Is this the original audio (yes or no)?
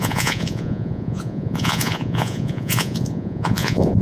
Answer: no